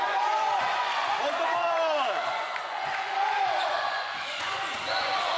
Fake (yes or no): yes